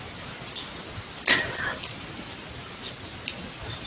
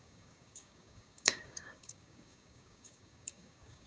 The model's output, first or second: second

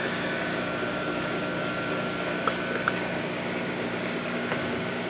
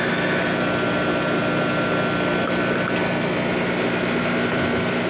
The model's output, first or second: first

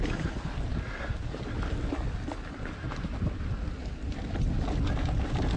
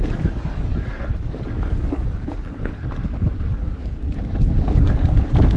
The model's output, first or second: second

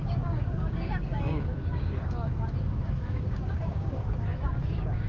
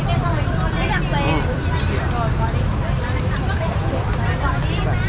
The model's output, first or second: first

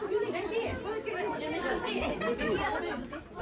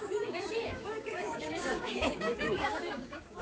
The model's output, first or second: second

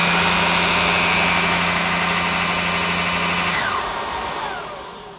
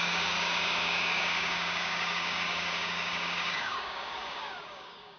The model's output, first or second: second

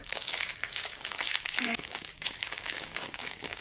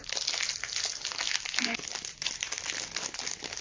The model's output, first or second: first